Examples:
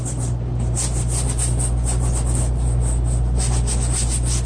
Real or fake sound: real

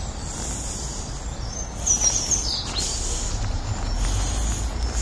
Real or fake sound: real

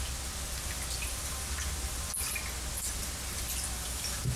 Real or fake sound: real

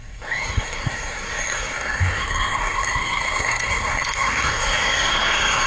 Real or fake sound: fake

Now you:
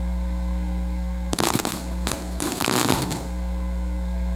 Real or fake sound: fake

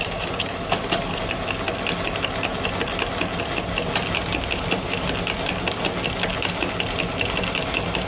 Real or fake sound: real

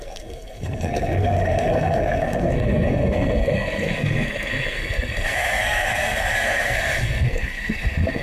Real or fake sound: fake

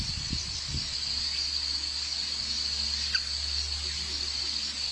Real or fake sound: real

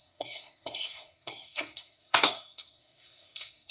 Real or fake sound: fake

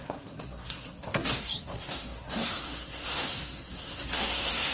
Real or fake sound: fake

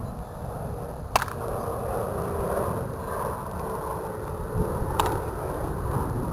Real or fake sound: real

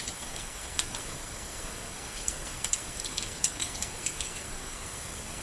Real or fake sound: fake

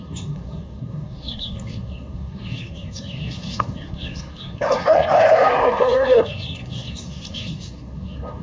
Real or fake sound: fake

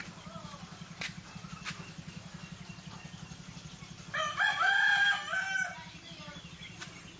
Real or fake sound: real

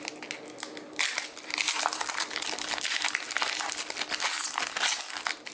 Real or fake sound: real